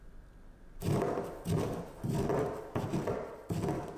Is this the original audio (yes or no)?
yes